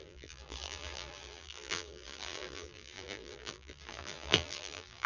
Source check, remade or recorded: remade